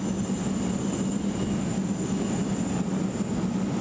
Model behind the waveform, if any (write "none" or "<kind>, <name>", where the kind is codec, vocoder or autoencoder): none